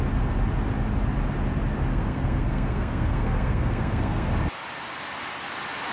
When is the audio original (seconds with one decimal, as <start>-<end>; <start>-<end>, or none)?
0.0-1.9; 4.3-5.9